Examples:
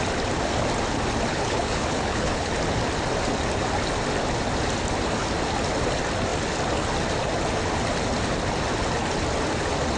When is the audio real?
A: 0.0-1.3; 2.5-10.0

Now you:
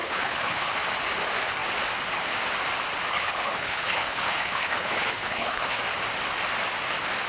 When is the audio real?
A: 0.7-3.1; 5.8-7.3

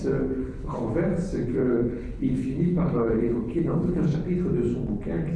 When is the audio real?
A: 0.0-0.4; 0.9-1.5; 4.2-5.4

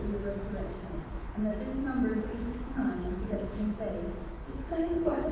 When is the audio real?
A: 0.0-1.0; 1.5-2.3; 3.8-4.3